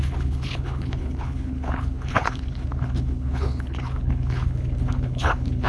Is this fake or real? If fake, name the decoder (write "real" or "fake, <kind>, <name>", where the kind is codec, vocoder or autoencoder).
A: fake, codec, HILCodec